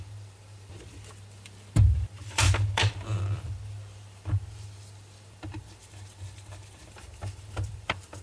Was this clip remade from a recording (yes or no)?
yes